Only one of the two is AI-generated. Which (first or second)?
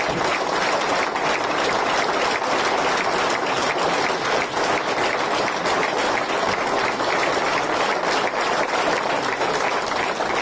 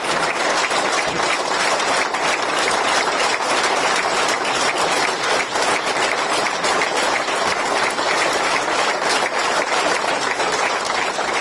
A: second